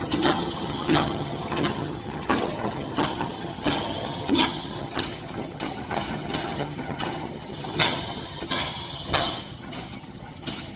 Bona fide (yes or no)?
no